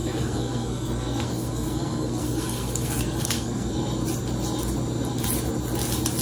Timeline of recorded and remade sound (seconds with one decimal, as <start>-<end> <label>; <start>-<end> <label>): 0.0-3.7 remade; 3.7-6.2 recorded